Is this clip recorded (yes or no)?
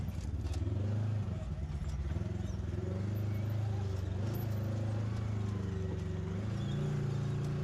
yes